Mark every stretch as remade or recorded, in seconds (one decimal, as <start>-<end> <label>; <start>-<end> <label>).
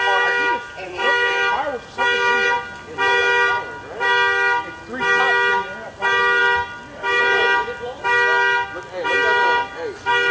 0.0-10.3 recorded